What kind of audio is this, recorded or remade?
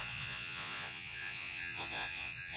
remade